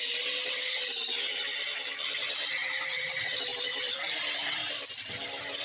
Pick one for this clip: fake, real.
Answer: real